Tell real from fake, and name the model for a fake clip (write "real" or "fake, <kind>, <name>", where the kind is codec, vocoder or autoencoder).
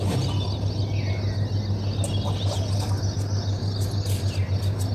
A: real